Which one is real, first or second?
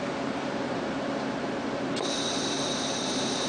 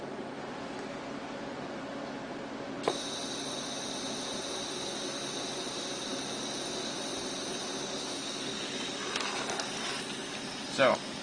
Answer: second